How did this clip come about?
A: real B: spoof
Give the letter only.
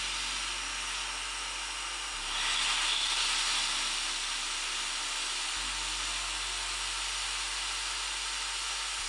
A